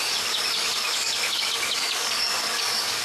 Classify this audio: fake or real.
fake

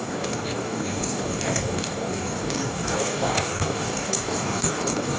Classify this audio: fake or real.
fake